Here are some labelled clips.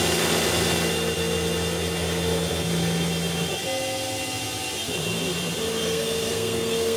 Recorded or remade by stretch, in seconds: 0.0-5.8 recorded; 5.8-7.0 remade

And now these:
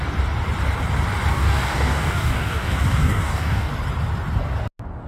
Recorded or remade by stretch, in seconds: 0.0-1.3 recorded; 1.3-3.7 remade; 3.7-5.1 recorded

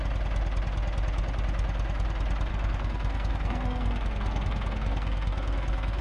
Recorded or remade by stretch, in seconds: 0.0-2.5 recorded; 2.5-6.0 remade

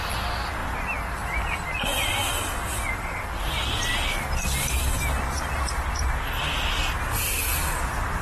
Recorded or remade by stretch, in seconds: 0.0-8.2 recorded

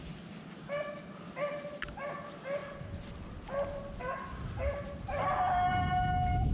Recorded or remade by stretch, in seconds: 0.0-6.5 recorded

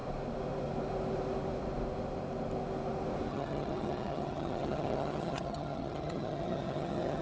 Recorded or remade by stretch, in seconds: 0.0-3.3 recorded; 3.3-7.2 remade

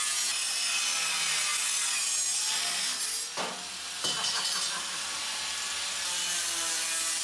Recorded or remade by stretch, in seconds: 0.0-7.2 recorded